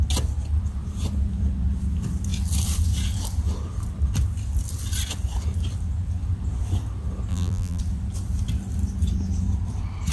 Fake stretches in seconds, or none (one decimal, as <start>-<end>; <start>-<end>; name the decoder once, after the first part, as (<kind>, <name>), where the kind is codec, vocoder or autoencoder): 7.3-7.8 (vocoder, BigVGAN v2)